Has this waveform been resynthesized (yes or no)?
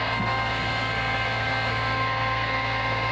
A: yes